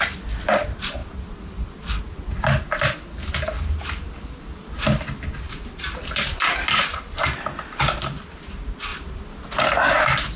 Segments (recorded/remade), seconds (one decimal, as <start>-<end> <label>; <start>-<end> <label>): 0.0-10.4 recorded